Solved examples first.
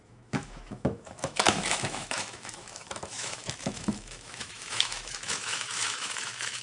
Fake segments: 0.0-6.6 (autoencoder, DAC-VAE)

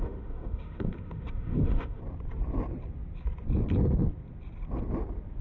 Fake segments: 0.0-2.0 (autoencoder, DAC-VAE)

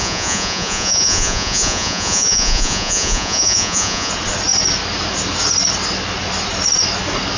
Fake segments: 0.0-4.1 (vocoder, Vocos)